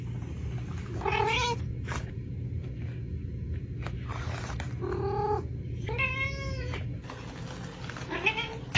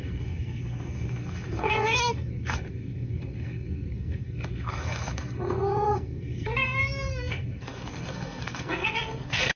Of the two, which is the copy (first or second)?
second